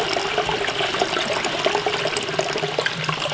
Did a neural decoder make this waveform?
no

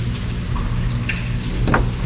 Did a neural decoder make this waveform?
no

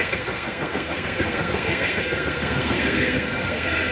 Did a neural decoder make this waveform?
yes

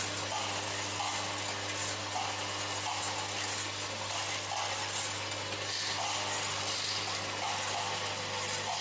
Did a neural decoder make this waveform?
no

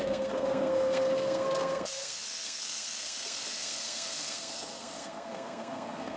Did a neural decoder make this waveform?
yes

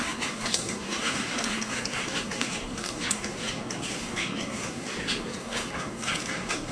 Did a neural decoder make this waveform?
yes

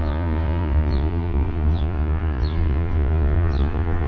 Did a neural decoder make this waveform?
yes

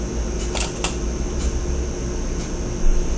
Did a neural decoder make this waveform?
no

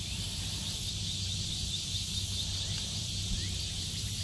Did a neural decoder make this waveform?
no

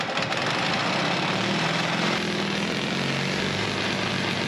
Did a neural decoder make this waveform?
no